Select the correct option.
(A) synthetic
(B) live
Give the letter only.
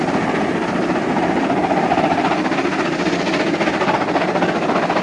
B